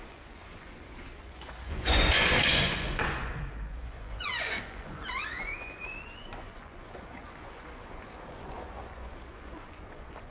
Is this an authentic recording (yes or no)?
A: no